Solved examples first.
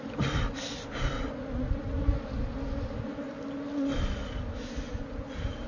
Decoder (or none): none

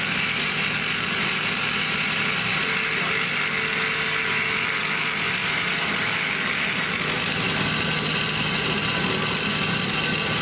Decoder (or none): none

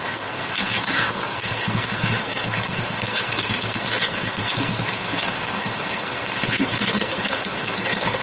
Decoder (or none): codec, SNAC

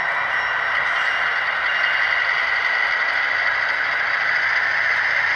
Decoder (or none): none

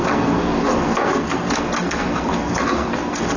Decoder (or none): codec, SNAC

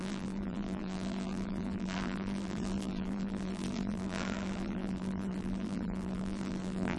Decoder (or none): vocoder, BigVGAN v2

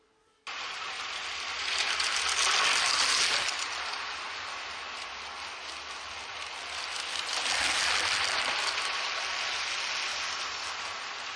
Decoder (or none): none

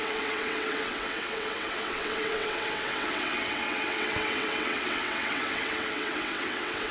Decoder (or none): vocoder, WaveNeXt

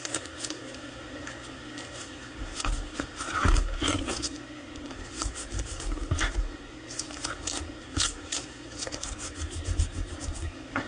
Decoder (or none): codec, SNAC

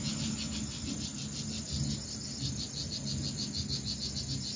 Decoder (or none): none